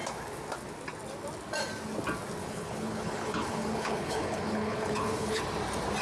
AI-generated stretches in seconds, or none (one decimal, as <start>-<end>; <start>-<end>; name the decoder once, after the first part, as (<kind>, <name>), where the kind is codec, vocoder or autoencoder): 2.4-5.4 (codec, HILCodec)